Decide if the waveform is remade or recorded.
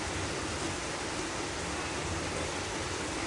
recorded